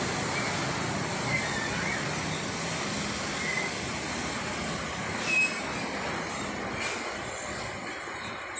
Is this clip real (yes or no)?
yes